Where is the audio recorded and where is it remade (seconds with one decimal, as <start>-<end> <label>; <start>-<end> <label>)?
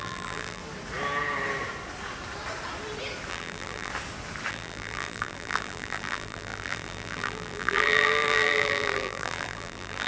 0.0-0.6 remade; 0.6-3.3 recorded; 3.3-3.9 remade; 3.9-4.5 recorded; 4.5-10.1 remade